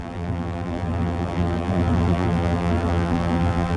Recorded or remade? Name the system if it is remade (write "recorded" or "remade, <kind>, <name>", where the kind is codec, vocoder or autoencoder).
remade, vocoder, BigVGAN v2